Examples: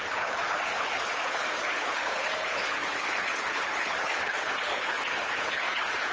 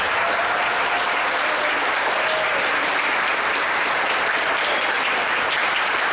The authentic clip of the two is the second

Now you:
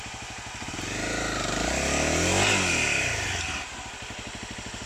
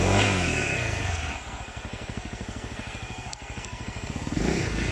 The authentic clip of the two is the first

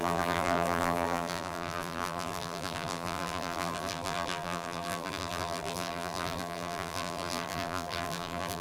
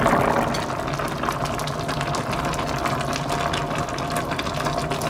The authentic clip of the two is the second